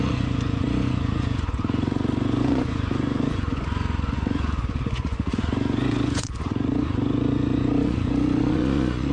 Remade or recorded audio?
remade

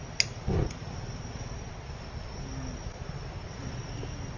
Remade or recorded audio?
recorded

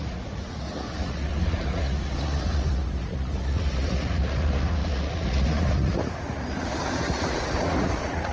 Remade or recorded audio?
remade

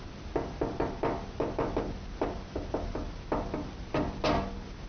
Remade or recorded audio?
recorded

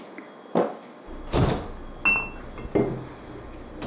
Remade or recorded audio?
recorded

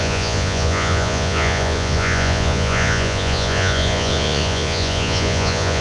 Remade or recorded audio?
remade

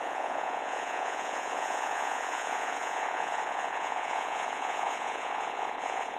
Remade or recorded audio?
remade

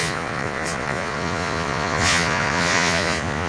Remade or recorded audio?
remade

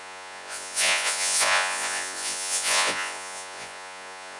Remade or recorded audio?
remade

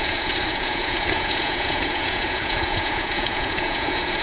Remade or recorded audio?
remade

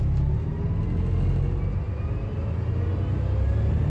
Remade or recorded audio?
recorded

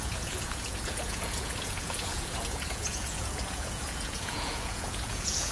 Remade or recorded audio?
remade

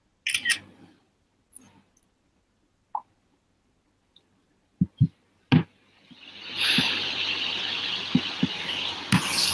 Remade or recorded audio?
recorded